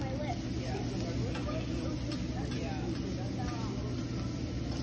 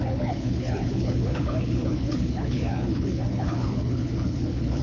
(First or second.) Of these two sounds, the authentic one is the first